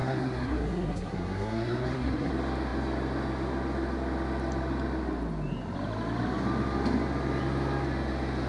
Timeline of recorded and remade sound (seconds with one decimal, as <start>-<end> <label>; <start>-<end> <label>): 0.0-2.3 remade; 2.3-8.5 recorded